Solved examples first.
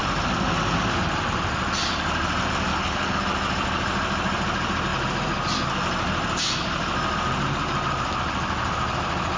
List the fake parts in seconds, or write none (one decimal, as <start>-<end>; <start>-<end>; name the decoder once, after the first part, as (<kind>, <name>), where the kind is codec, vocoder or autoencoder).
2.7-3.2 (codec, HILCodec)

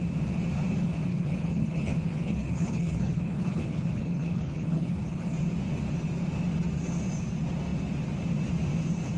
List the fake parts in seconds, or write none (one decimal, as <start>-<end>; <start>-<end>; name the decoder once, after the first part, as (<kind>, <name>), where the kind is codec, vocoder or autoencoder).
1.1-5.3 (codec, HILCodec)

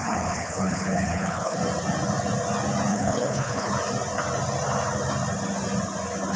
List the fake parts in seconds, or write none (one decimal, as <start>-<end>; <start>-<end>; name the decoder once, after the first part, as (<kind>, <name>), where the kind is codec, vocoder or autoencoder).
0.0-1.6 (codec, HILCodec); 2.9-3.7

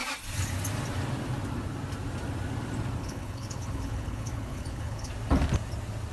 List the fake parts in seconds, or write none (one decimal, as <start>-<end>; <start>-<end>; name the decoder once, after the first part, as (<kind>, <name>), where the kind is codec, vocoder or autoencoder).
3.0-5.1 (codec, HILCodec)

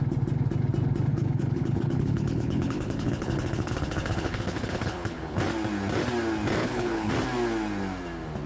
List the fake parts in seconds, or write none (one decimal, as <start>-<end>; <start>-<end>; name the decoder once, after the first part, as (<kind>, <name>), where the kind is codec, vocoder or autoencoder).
1.1-5.4 (codec, HILCodec); 6.6-7.1